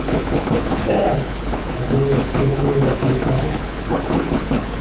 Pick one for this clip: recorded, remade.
remade